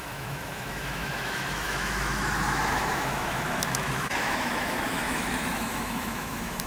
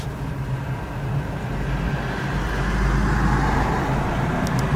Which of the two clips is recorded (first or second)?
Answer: second